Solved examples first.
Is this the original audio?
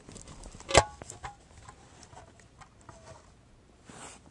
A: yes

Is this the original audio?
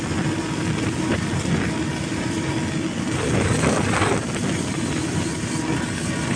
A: yes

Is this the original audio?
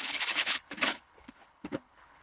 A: no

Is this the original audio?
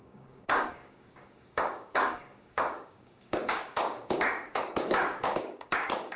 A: no